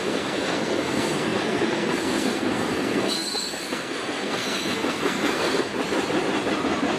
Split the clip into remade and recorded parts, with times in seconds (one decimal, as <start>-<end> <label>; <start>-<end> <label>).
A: 0.0-5.7 remade; 5.7-7.0 recorded